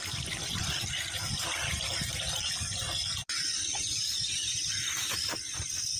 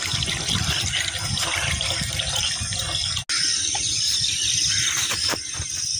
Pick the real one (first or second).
second